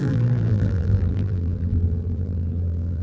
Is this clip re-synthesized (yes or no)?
yes